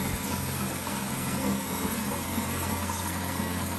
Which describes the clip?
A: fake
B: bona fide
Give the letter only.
A